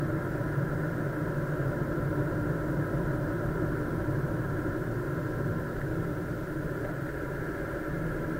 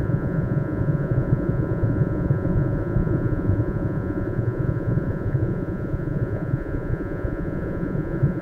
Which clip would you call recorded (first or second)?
first